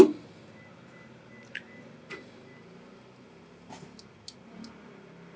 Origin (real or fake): real